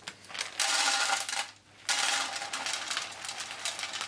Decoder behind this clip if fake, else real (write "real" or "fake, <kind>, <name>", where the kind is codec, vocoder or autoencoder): real